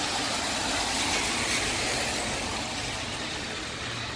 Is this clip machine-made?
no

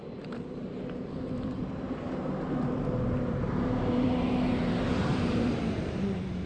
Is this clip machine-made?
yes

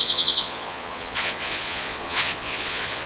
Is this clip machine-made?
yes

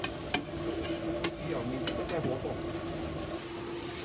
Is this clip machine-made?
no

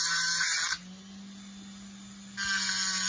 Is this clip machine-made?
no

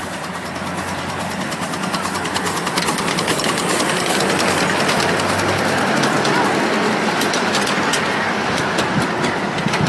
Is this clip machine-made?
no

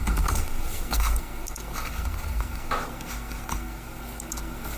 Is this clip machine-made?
yes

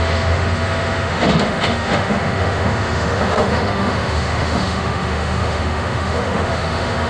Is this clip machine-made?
yes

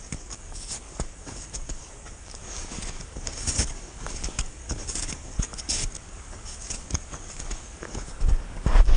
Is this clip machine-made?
yes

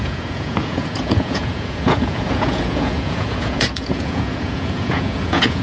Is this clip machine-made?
yes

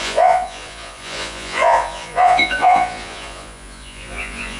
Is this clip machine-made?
yes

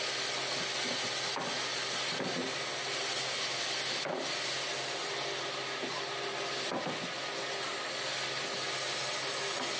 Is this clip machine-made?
no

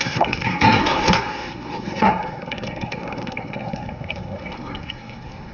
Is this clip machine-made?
yes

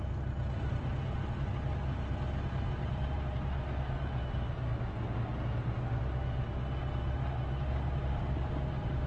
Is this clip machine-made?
no